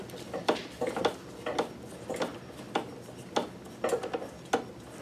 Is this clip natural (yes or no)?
yes